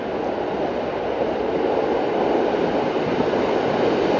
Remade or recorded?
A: recorded